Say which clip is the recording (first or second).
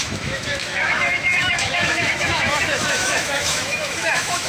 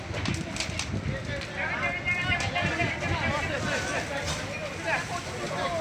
second